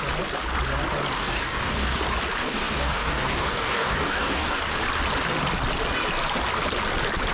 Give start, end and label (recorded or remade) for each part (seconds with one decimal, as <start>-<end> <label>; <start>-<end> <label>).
0.0-1.2 recorded; 1.2-2.0 remade; 2.0-2.4 recorded; 2.4-4.6 remade; 4.6-7.3 recorded